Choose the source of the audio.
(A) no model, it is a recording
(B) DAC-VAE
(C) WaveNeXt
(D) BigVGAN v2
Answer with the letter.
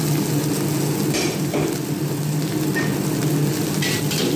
A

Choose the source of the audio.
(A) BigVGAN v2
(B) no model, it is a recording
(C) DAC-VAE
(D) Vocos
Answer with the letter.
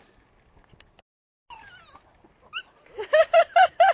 B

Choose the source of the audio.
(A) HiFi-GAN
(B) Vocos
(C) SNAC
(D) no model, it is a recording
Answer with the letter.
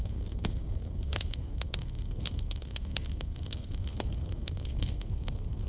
C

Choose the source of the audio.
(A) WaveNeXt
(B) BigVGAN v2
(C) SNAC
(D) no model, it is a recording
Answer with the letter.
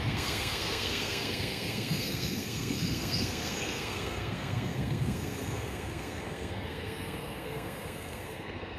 C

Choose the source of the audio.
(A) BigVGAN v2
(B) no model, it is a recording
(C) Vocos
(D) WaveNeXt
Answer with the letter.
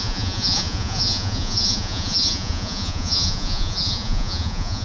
C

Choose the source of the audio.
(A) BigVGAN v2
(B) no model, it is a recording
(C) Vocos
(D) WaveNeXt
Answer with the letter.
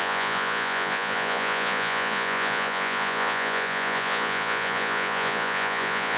C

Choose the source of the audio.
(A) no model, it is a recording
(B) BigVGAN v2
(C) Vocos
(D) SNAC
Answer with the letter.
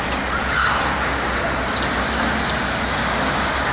A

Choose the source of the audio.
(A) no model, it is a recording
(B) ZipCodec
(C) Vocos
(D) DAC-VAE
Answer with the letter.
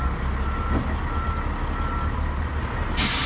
A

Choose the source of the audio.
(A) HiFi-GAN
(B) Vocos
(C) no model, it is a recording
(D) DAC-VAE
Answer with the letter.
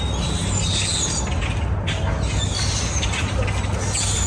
C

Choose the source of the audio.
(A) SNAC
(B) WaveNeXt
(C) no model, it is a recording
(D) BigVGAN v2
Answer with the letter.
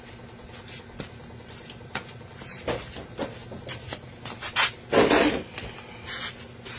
C